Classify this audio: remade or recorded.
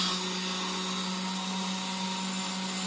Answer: recorded